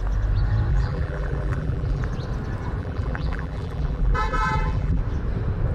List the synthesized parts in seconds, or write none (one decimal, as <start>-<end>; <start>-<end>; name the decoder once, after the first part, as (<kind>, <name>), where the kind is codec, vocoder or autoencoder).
0.7-2.0 (vocoder, BigVGAN v2); 2.8-5.0